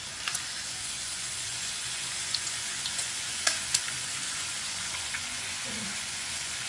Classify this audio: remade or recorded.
remade